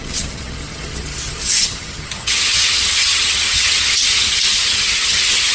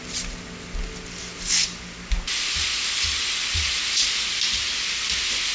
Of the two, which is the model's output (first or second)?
first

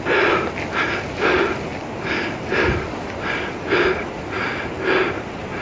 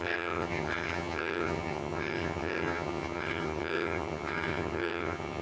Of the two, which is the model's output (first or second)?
second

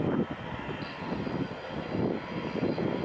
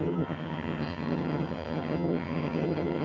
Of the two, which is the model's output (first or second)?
second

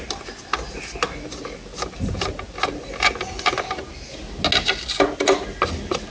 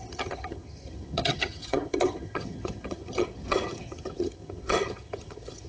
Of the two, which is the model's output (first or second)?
second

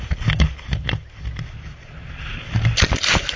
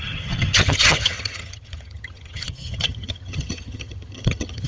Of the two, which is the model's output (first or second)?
second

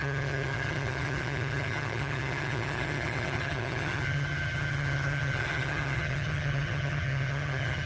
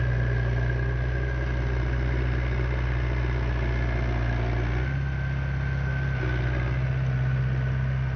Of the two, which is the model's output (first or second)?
first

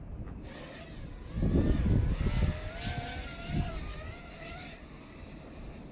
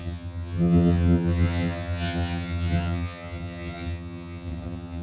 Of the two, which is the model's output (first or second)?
second